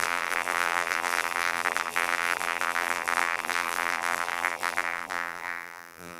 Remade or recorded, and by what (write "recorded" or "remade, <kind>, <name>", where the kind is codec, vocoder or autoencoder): remade, vocoder, BigVGAN v2